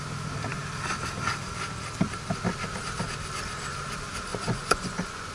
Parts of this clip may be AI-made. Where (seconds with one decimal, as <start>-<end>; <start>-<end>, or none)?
4.3-5.3